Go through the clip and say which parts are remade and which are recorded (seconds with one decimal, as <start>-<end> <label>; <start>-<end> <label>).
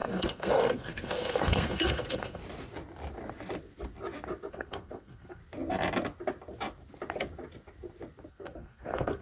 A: 0.0-2.4 remade; 2.4-4.5 recorded; 4.5-5.4 remade; 5.4-8.3 recorded; 8.3-9.2 remade